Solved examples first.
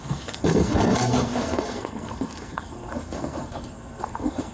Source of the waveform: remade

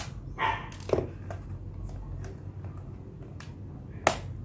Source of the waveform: recorded